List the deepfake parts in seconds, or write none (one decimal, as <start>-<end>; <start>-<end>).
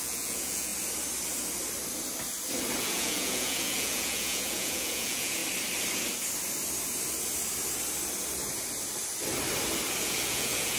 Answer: 0.0-0.7; 2.8-5.4; 10.0-10.8